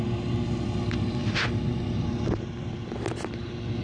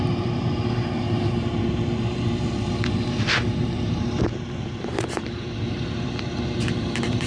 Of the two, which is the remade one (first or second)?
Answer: second